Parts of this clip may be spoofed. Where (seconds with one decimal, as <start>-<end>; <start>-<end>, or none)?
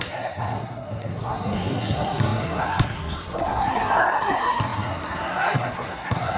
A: 0.0-6.4